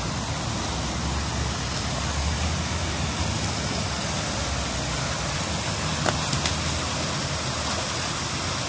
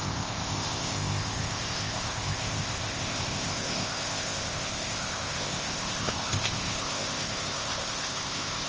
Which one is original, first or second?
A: first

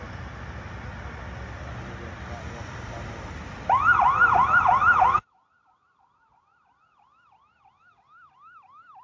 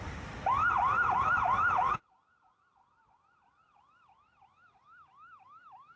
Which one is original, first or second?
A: first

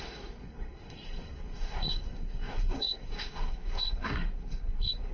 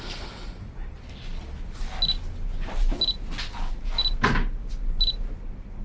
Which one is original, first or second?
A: second